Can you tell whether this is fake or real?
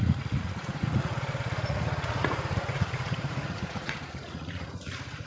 fake